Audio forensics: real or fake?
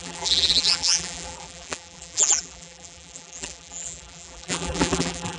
fake